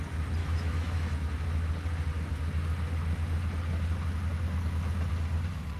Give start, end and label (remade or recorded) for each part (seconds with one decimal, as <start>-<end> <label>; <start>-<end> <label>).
0.0-0.4 recorded; 0.4-1.7 remade; 1.7-5.8 recorded